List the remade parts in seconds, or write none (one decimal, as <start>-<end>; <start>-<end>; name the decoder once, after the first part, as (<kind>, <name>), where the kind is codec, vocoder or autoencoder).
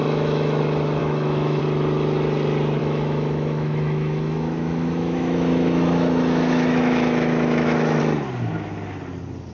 0.0-0.6 (autoencoder, DAC-VAE); 1.0-1.6; 2.8-8.0